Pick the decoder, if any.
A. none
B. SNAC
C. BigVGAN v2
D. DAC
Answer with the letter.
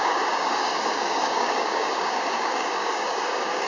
D